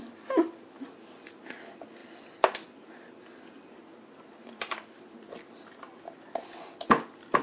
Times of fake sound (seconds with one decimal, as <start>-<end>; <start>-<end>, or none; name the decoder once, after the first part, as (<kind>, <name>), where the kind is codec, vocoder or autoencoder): none